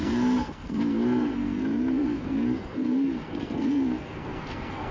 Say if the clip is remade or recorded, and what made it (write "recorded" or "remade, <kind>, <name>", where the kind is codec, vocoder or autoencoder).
remade, codec, SNAC